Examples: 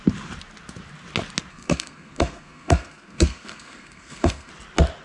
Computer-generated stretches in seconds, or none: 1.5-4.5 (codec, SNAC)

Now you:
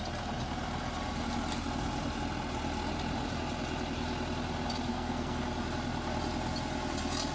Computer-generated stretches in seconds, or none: 4.9-5.4 (codec, SNAC)

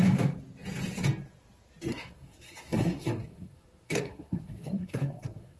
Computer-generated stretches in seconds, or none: 1.9-5.6 (codec, SNAC)

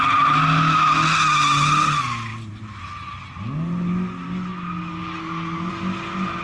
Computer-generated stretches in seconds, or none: none

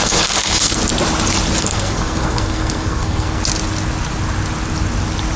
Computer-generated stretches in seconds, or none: 0.0-0.8 (codec, SNAC); 1.6-3.4